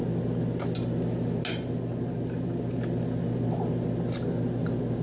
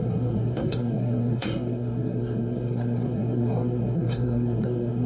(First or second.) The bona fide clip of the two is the first